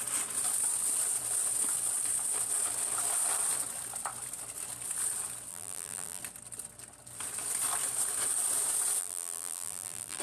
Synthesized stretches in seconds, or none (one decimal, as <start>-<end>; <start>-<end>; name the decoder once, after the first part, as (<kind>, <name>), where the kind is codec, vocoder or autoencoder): 5.5-6.2 (vocoder, BigVGAN v2); 9.0-10.2